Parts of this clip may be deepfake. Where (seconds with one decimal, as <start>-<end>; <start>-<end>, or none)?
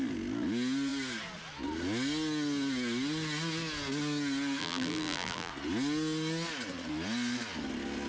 4.6-5.5